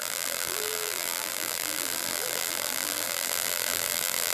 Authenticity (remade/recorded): remade